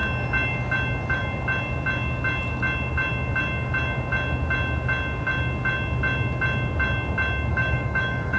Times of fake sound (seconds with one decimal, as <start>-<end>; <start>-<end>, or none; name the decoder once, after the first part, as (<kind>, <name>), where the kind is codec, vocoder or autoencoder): 7.5-8.4 (autoencoder, DAC-VAE)